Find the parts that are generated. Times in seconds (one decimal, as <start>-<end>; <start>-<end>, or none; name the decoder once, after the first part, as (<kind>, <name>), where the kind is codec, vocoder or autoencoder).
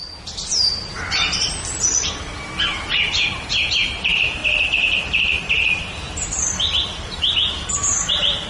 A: 0.0-2.9 (vocoder, BigVGAN v2); 3.7-8.5